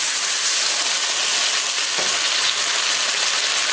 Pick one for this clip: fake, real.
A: real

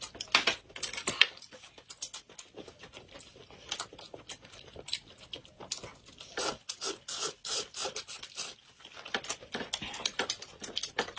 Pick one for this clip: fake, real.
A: real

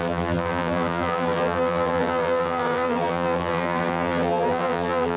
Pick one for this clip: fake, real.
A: fake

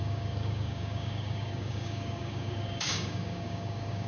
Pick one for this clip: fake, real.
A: fake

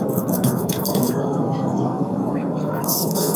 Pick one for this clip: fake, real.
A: fake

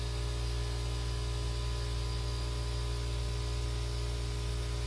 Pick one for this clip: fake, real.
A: real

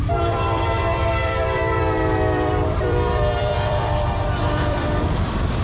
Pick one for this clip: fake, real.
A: fake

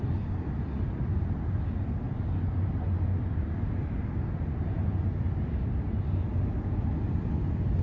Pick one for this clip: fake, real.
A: real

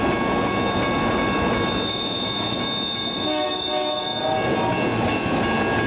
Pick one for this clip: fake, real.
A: real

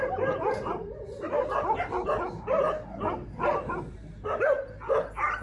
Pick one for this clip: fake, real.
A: real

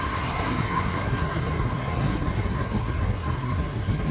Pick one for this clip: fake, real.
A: fake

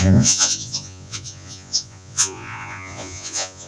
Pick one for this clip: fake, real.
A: fake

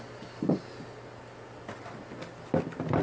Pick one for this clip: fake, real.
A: real